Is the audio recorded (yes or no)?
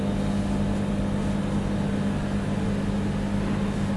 yes